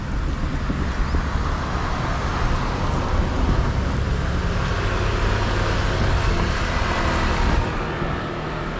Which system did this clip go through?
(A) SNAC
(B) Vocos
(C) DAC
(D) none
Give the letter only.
D